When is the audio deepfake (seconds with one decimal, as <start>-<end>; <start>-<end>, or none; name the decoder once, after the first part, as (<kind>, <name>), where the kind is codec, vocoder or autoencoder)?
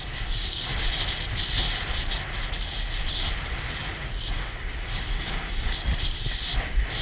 0.0-0.7 (codec, DAC); 4.3-5.9